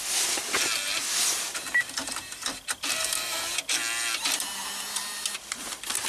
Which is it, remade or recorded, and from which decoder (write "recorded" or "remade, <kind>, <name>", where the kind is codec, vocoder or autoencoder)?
recorded